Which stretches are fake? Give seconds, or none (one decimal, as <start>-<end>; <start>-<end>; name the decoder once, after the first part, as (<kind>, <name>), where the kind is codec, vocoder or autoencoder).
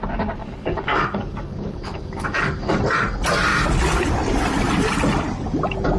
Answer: 0.4-2.8 (codec, DAC)